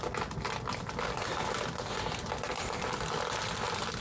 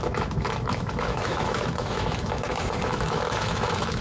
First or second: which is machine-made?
second